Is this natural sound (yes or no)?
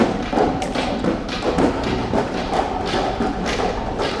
no